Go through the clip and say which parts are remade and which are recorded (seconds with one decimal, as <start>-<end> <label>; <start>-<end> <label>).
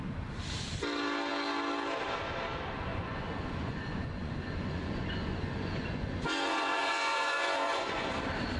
0.0-2.9 recorded; 2.9-8.1 remade; 8.1-8.6 recorded